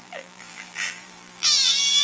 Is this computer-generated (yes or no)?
yes